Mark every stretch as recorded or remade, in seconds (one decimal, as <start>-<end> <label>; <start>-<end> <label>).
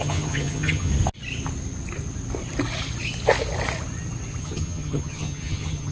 0.0-0.9 remade; 0.9-4.4 recorded; 4.4-5.9 remade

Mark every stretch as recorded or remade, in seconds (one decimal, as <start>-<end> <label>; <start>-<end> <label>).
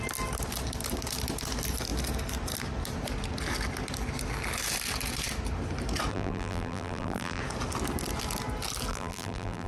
0.0-6.1 recorded; 6.1-7.4 remade; 7.4-8.9 recorded; 8.9-9.7 remade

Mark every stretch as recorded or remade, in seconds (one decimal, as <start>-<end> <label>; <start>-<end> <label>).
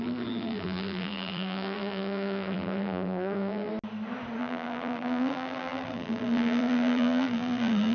0.0-3.7 remade; 3.7-4.4 recorded; 4.4-7.9 remade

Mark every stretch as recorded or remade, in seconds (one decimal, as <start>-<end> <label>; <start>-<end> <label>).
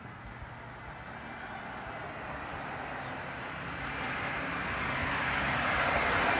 0.0-5.0 recorded; 5.0-5.8 remade; 5.8-6.4 recorded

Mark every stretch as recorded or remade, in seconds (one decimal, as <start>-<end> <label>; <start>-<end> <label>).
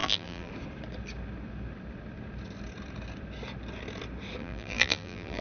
0.0-0.5 remade; 0.5-4.4 recorded; 4.4-5.4 remade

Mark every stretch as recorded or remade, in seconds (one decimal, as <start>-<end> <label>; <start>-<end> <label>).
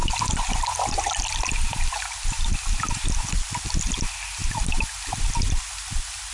0.0-6.3 recorded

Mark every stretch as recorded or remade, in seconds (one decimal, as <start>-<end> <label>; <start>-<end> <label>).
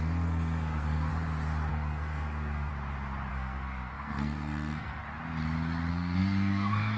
0.0-1.1 remade; 1.1-1.7 recorded; 1.7-2.7 remade; 2.7-3.3 recorded; 3.3-5.0 remade; 5.0-5.9 recorded; 5.9-7.0 remade